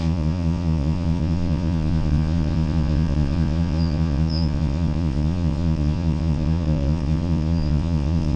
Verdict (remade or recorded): remade